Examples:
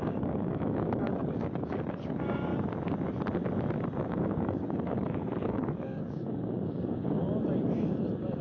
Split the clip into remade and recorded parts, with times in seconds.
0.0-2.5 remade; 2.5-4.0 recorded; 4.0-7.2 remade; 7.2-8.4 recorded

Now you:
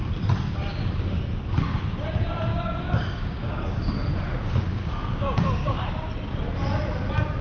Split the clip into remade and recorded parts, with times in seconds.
0.0-0.7 recorded; 0.7-1.2 remade; 1.2-2.5 recorded; 2.5-3.9 remade; 3.9-4.7 recorded; 4.7-5.8 remade; 5.8-7.4 recorded

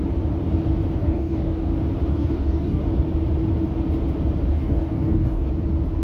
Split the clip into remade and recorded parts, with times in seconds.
0.0-1.0 recorded; 1.0-1.7 remade; 1.7-2.1 recorded; 2.1-2.8 remade; 2.8-4.5 recorded; 4.5-5.5 remade; 5.5-6.0 recorded

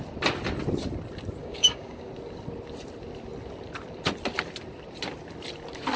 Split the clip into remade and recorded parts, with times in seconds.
0.0-1.4 recorded; 1.4-2.1 remade; 2.1-6.0 recorded

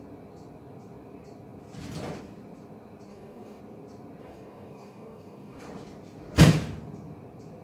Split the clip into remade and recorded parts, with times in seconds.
0.0-3.1 recorded; 3.1-3.6 remade; 3.6-4.2 recorded; 4.2-5.6 remade; 5.6-7.6 recorded

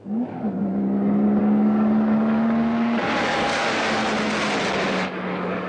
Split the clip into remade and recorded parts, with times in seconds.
0.0-0.6 remade; 0.6-1.4 recorded; 1.4-4.0 remade; 4.0-4.9 recorded; 4.9-5.7 remade

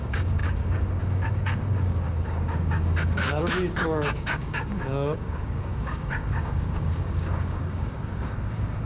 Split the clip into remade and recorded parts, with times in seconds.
0.0-8.9 remade